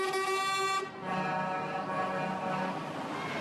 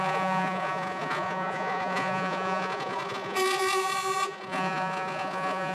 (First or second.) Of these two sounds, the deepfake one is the second